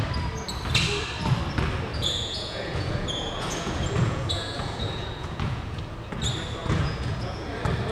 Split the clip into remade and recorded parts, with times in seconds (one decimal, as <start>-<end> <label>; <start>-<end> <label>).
0.0-1.9 recorded; 1.9-5.8 remade; 5.8-6.6 recorded; 6.6-7.5 remade; 7.5-7.9 recorded